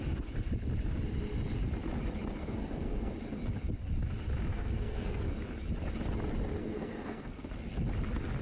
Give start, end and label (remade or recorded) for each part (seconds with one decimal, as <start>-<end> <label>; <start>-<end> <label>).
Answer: 0.0-2.4 recorded; 2.4-3.1 remade; 3.1-4.5 recorded; 4.5-5.2 remade; 5.2-6.6 recorded; 6.6-7.5 remade; 7.5-8.4 recorded